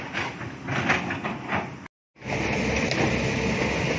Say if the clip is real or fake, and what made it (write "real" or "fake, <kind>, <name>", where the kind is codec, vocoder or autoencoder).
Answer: real